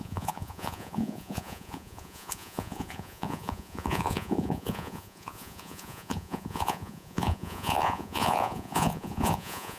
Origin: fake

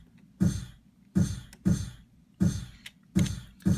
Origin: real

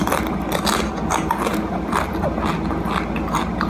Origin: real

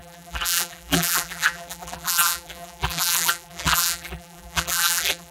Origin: fake